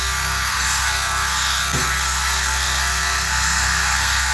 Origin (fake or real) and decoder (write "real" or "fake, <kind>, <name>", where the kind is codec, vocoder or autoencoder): fake, codec, SNAC